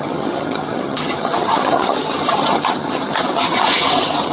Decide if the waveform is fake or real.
fake